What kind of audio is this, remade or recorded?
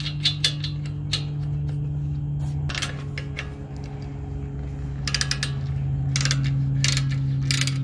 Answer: recorded